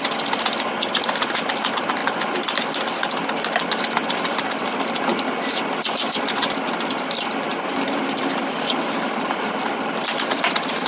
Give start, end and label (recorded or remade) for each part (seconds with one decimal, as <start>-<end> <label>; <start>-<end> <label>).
0.0-10.9 recorded